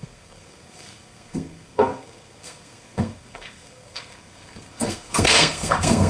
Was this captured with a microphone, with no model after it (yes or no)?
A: no